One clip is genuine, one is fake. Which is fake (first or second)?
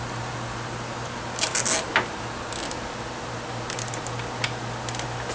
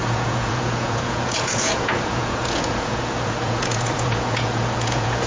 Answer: second